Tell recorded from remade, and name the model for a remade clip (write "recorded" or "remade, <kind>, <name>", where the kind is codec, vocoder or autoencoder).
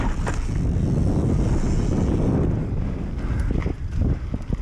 recorded